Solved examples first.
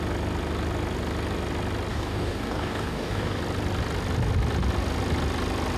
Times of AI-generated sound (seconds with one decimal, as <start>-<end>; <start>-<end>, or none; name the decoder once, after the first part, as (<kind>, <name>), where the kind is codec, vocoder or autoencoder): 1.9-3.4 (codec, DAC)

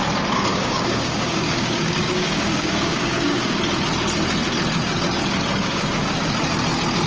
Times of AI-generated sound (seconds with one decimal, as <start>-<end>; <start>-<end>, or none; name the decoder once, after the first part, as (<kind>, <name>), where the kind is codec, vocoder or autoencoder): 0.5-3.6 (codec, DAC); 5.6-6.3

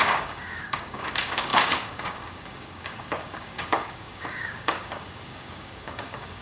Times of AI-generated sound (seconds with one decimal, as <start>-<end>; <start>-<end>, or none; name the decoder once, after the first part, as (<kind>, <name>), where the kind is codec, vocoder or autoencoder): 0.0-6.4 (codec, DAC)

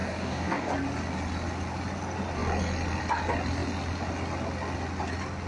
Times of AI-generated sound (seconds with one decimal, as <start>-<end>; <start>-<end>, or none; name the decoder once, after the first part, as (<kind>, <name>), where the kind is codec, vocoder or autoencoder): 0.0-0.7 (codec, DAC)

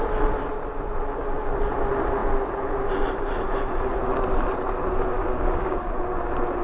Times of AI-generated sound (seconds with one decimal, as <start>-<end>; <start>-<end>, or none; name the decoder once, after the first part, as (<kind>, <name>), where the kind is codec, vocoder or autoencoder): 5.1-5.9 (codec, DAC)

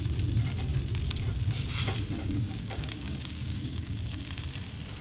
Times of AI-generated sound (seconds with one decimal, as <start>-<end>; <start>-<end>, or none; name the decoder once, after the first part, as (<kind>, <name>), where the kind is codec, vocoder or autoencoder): 2.2-4.4 (codec, DAC)

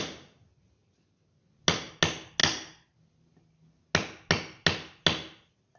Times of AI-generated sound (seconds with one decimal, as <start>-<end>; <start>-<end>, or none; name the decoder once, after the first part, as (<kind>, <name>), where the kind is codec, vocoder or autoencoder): none

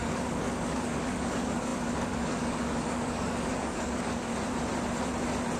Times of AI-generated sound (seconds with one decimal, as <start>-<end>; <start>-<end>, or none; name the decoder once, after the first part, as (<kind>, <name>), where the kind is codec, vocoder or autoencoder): 0.0-4.3 (codec, DAC)